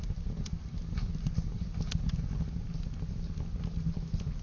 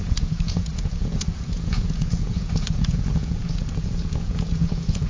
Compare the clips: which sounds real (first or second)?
first